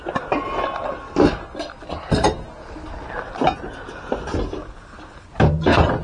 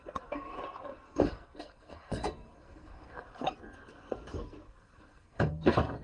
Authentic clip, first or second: first